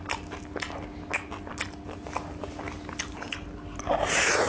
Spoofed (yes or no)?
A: no